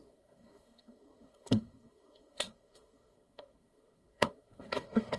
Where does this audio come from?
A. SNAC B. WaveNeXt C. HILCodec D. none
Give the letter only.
A